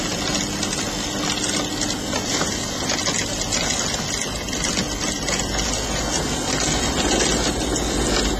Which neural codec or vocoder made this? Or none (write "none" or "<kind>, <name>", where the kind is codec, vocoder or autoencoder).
none